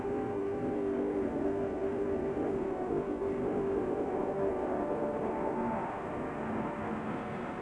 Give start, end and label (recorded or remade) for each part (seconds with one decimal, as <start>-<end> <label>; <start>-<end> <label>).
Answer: 0.0-7.6 remade